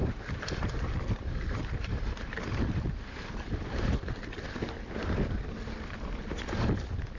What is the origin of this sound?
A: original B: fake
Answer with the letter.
B